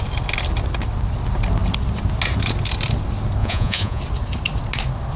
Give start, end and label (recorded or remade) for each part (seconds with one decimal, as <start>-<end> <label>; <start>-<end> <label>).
0.0-3.4 recorded; 3.4-4.0 remade; 4.0-5.2 recorded